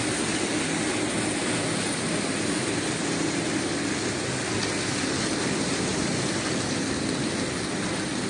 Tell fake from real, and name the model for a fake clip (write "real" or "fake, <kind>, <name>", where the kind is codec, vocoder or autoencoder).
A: real